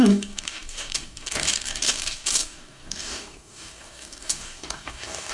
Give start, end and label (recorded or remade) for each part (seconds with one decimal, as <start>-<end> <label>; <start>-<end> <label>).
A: 0.0-5.3 remade